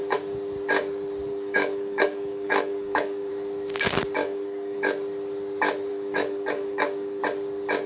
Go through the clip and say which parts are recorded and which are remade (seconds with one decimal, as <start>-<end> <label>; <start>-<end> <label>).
0.0-1.3 recorded; 1.3-3.3 remade; 3.3-4.2 recorded; 4.2-4.9 remade; 4.9-5.9 recorded; 5.9-7.2 remade; 7.2-7.9 recorded